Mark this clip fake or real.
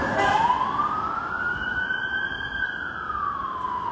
real